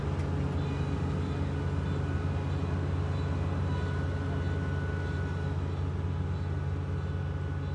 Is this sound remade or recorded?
recorded